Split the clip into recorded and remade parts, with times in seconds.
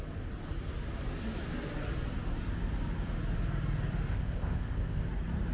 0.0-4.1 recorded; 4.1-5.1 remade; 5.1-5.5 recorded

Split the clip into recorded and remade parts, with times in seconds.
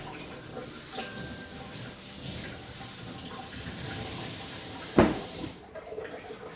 0.0-6.6 remade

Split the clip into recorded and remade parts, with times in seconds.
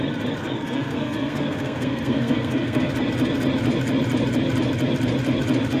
0.0-0.4 recorded; 0.4-2.9 remade; 2.9-5.8 recorded